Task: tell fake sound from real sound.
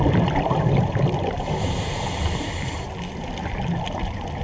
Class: real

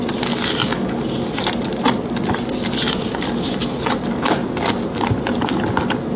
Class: real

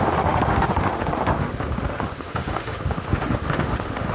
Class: fake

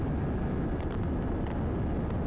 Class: real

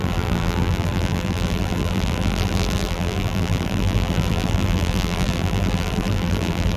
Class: fake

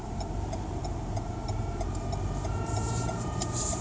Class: fake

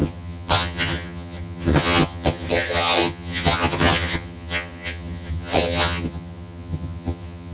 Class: fake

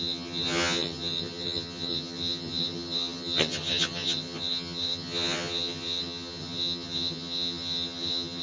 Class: fake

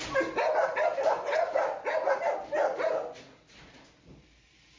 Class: real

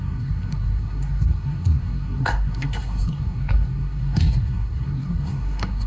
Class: fake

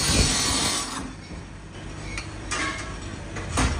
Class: fake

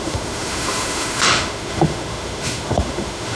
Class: fake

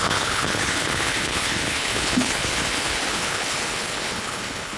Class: fake